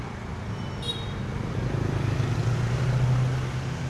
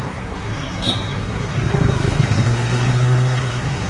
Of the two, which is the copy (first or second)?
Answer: second